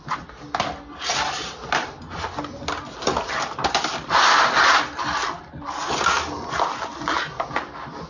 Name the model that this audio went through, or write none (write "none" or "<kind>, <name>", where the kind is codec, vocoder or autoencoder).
none